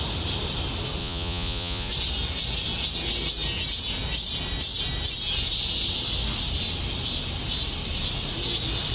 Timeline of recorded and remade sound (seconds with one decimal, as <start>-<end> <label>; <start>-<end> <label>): 0.0-1.0 recorded; 1.0-1.9 remade; 1.9-8.9 recorded